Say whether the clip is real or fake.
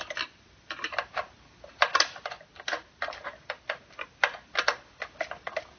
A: real